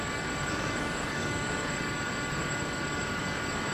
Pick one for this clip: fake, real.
fake